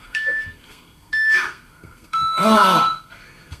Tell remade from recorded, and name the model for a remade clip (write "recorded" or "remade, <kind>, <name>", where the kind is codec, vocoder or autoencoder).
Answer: remade, codec, SNAC